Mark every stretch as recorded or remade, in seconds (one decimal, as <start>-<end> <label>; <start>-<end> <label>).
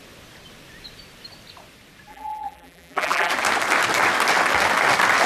0.0-2.1 recorded; 2.1-3.3 remade; 3.3-5.3 recorded